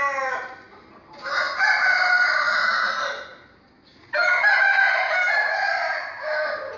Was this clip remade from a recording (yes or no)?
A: no